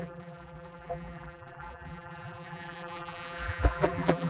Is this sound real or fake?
fake